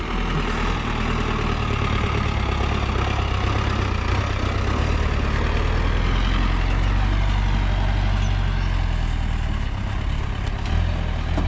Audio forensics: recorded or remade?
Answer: recorded